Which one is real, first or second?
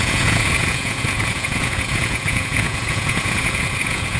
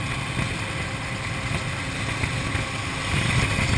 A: second